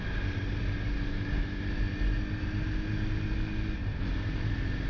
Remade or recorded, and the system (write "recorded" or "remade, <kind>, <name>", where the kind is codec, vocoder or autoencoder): recorded